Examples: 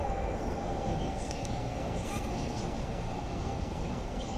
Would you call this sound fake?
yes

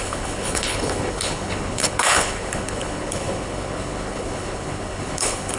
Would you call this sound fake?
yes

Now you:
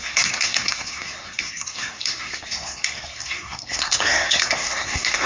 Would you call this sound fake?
yes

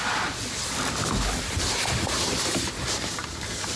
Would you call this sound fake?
no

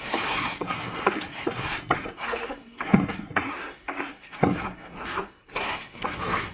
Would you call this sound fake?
yes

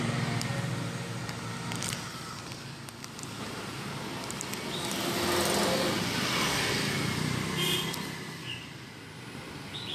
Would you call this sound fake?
no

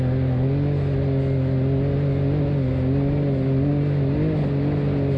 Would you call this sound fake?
no